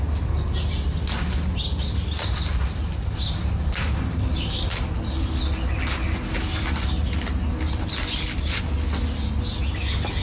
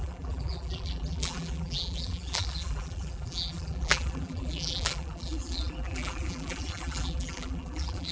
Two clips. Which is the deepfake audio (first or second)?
second